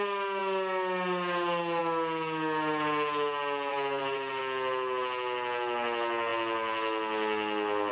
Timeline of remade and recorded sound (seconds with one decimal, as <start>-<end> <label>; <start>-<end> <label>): 0.0-3.7 recorded; 3.7-4.4 remade; 4.4-7.9 recorded